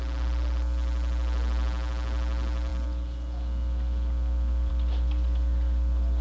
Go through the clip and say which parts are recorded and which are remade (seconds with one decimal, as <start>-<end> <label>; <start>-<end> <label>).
0.0-6.2 recorded